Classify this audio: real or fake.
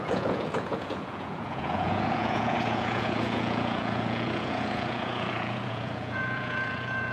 fake